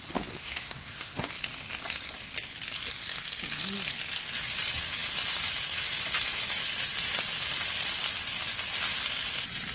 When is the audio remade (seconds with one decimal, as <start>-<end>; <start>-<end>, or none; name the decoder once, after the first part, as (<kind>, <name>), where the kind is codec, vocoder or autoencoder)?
0.4-1.3 (codec, SNAC)